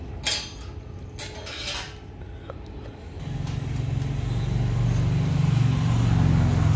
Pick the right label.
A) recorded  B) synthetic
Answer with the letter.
A